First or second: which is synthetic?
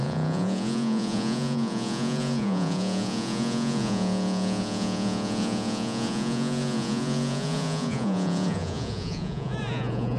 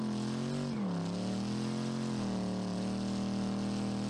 first